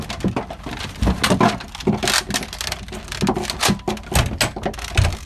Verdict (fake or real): real